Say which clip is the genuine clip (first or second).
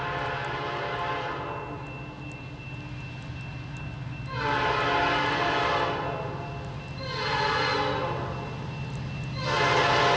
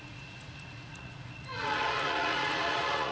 first